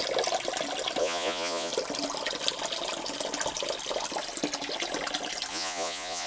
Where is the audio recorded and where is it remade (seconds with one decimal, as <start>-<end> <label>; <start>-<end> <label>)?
0.0-1.0 recorded; 1.0-1.7 remade; 1.7-5.5 recorded; 5.5-6.3 remade